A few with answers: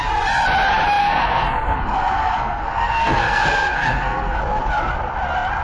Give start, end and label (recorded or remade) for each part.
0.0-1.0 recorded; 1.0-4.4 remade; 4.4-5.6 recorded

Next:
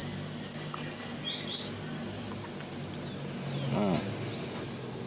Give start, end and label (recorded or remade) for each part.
0.0-5.1 recorded

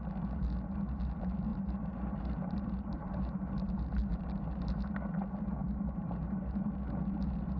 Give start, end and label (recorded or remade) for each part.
0.0-1.5 recorded; 1.5-3.7 remade; 3.7-5.6 recorded; 5.6-6.4 remade; 6.4-7.6 recorded

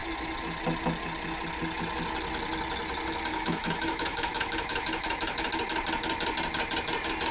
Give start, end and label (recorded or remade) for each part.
0.0-3.3 recorded; 3.3-5.5 remade; 5.5-7.3 recorded